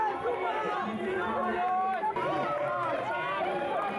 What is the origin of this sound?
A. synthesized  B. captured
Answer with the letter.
A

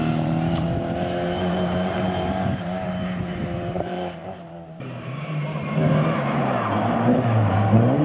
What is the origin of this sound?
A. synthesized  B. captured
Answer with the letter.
A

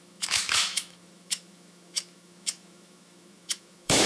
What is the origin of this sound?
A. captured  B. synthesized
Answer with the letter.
B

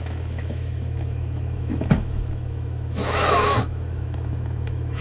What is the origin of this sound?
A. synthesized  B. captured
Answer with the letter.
A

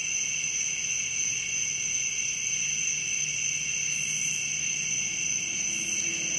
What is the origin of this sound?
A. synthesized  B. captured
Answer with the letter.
B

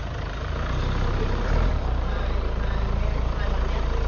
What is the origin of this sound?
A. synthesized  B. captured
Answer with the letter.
A